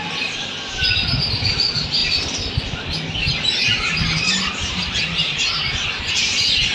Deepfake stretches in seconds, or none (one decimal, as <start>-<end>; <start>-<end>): none